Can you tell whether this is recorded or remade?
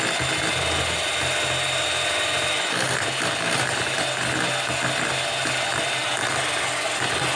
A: remade